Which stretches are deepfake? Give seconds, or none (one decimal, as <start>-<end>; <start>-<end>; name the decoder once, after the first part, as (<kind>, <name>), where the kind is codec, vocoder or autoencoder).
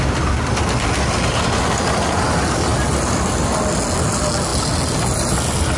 none